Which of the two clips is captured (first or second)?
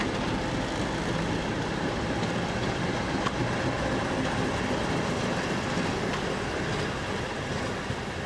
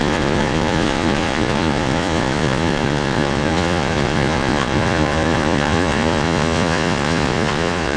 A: first